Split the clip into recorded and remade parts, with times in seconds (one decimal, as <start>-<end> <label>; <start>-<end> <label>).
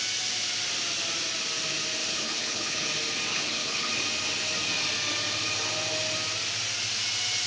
0.0-2.0 recorded; 2.0-2.9 remade; 2.9-3.3 recorded; 3.3-3.9 remade; 3.9-7.5 recorded